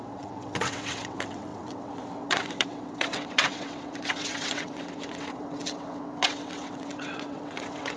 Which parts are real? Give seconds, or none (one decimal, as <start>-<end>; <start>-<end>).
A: none